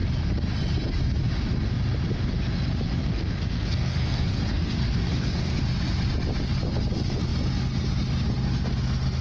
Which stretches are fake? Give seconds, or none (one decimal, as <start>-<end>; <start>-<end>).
3.0-5.6